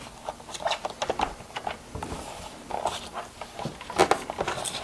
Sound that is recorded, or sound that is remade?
recorded